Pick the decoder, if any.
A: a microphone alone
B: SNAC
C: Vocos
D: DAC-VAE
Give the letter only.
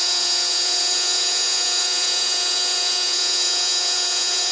C